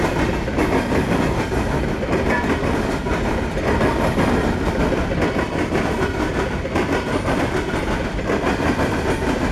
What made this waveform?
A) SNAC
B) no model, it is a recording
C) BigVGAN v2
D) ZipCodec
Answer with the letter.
B